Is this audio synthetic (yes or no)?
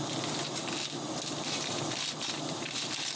no